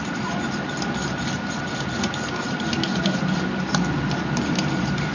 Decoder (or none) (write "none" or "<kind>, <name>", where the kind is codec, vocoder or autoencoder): vocoder, BigVGAN v2